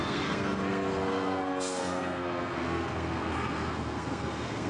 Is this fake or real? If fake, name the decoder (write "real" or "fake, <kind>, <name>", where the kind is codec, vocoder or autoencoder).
fake, codec, SNAC